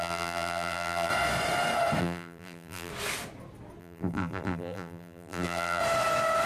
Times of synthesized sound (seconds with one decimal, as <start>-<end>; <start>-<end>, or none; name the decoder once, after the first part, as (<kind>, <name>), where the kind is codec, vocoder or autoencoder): 0.0-1.1 (vocoder, BigVGAN v2); 2.0-2.9; 3.8-5.8